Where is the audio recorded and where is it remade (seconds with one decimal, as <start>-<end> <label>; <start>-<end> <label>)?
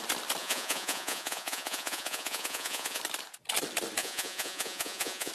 0.0-0.4 recorded; 0.4-3.0 remade; 3.0-4.0 recorded; 4.0-5.3 remade